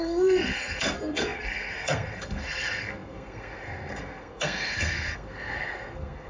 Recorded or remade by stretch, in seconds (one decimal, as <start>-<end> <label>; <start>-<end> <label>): 0.0-6.3 remade